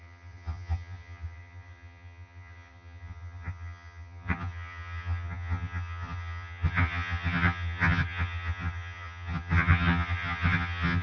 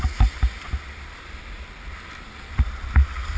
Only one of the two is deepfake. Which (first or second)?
first